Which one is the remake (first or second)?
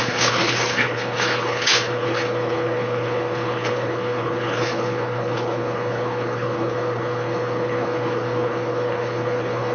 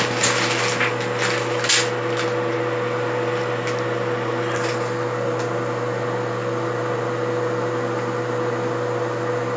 first